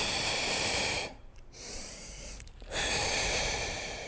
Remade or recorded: remade